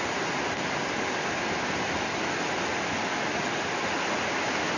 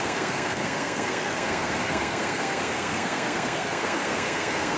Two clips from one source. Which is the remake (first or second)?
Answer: second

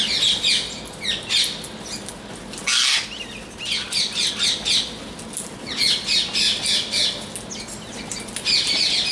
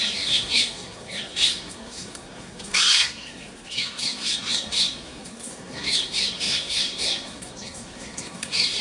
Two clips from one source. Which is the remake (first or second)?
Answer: second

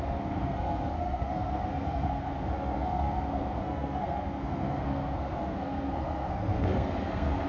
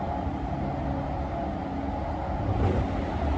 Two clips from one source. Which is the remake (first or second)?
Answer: first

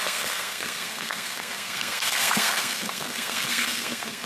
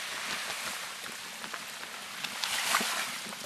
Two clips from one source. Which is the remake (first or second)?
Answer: first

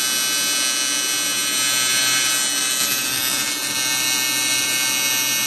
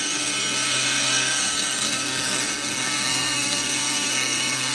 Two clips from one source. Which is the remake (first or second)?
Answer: second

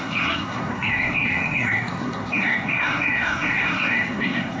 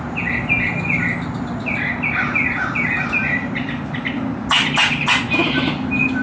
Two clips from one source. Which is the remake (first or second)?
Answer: first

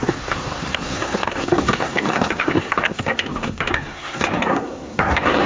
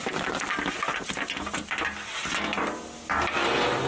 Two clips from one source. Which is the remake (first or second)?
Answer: first